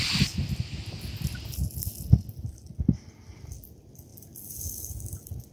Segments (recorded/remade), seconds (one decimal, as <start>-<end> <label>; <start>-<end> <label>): 0.0-5.5 recorded